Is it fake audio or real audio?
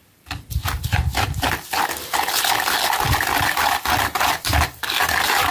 fake